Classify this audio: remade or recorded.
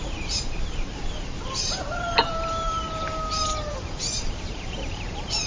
remade